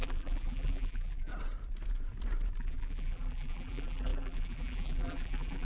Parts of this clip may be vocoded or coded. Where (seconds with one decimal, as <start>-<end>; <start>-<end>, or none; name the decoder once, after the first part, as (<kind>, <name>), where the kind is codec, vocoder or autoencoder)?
0.0-1.3 (vocoder, BigVGAN v2); 2.6-5.6